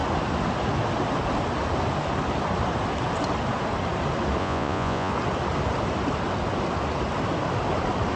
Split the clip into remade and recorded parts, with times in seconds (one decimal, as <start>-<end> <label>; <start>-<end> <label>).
0.0-4.4 recorded; 4.4-5.1 remade; 5.1-8.2 recorded